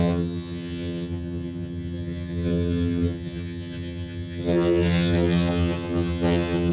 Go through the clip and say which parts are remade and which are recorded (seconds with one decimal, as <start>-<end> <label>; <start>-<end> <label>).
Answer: 0.0-6.7 remade